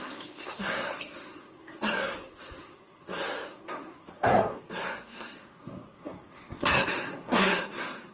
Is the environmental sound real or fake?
fake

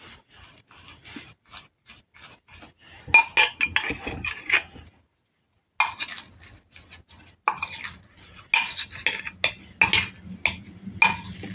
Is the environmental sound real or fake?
real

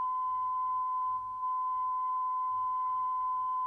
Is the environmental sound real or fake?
fake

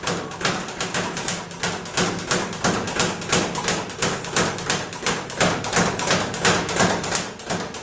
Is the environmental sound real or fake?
real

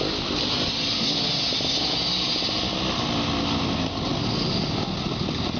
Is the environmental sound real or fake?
real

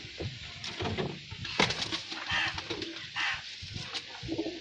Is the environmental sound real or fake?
real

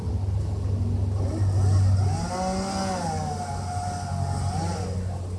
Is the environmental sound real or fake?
real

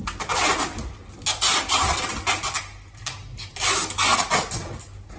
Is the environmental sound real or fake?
real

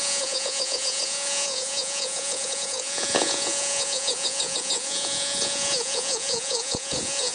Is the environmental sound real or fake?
fake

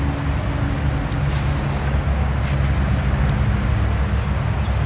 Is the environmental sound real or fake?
real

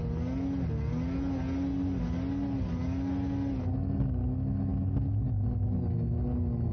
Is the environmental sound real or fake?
real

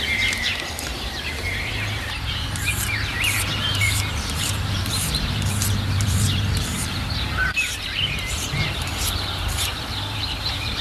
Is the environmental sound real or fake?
fake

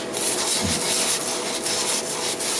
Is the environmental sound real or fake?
real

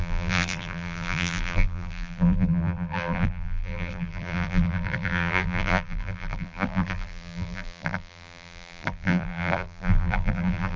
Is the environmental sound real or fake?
fake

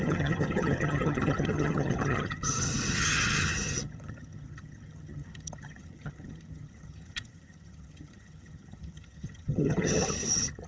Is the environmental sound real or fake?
fake